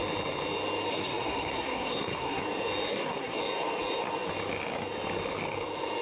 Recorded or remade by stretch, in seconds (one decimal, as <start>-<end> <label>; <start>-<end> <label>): 0.0-0.9 recorded; 0.9-2.4 remade; 2.4-2.9 recorded; 2.9-3.4 remade; 3.4-6.0 recorded